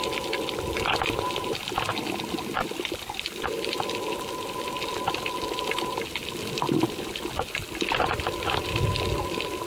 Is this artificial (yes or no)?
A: no